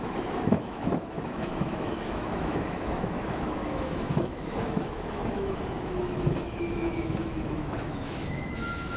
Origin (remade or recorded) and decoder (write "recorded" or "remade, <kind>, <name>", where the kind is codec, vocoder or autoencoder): remade, autoencoder, DAC-VAE